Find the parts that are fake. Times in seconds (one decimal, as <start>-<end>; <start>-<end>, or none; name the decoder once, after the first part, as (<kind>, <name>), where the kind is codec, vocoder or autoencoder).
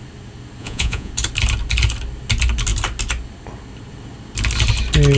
0.6-1.1 (vocoder, Vocos)